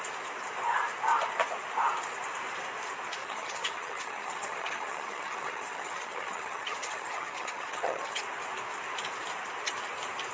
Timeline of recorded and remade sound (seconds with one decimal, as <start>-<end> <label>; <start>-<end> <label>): 0.0-3.2 recorded; 3.2-8.2 remade; 8.2-10.3 recorded